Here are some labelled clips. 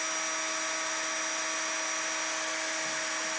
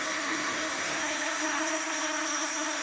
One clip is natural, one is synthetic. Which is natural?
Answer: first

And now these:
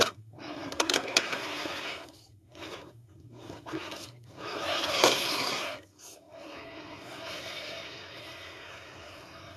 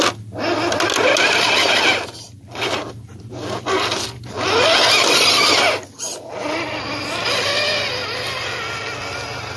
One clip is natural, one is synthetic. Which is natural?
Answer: second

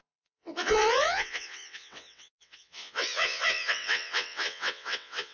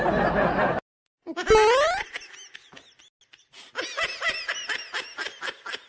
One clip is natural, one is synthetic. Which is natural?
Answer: second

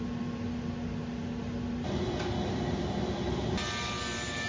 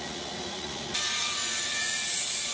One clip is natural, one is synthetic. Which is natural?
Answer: first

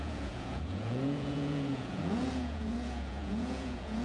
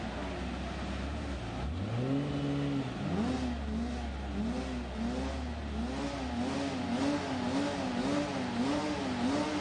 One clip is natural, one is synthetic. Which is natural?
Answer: second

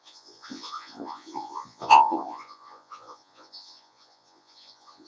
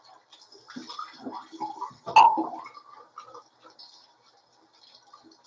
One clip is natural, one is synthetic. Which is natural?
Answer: second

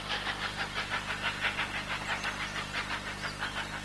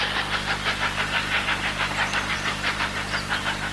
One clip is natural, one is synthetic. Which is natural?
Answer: first